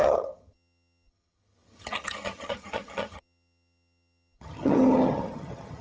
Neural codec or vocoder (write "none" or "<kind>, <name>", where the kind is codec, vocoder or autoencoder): vocoder, HiFi-GAN